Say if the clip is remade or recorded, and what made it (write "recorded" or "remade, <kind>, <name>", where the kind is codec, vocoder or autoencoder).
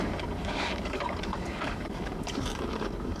remade, codec, DAC